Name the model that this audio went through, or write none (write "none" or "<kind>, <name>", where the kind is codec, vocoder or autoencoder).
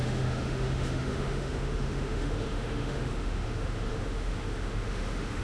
autoencoder, DAC-VAE